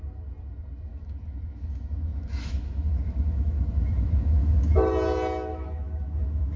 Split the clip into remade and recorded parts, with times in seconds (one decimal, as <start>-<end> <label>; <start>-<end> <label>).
0.0-0.9 recorded; 0.9-4.9 remade; 4.9-5.5 recorded; 5.5-6.6 remade